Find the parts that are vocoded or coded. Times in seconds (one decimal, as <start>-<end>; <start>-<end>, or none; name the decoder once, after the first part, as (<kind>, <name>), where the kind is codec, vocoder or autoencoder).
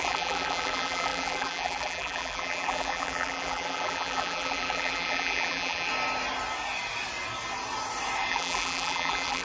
0.0-5.9 (vocoder, BigVGAN v2); 8.3-9.4